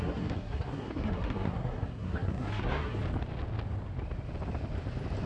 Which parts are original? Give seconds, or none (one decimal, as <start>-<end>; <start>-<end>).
3.0-5.3